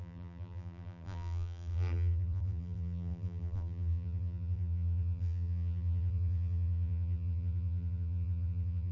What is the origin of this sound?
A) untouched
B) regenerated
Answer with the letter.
B